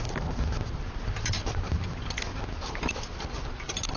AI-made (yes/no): no